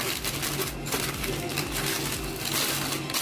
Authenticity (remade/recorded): recorded